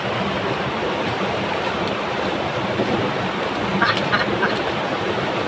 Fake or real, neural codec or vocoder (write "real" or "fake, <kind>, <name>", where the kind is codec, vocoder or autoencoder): fake, vocoder, BigVGAN v2